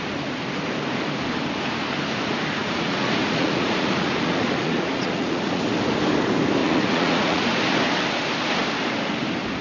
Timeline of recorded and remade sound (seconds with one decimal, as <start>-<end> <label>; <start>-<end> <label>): 0.0-2.6 recorded; 2.6-5.6 remade; 5.6-6.6 recorded; 6.6-7.6 remade; 7.6-9.6 recorded